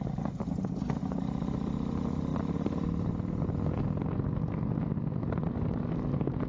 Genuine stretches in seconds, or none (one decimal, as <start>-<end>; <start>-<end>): 0.0-6.5